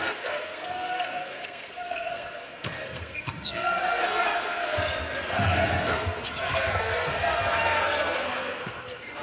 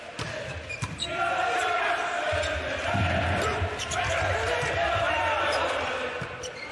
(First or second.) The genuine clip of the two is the second